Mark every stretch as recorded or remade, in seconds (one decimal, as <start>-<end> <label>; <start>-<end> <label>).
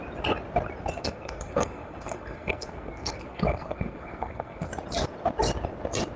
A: 0.0-1.0 recorded; 1.0-4.7 remade; 4.7-6.2 recorded